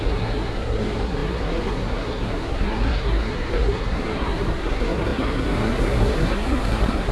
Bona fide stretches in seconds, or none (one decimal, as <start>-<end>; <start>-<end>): none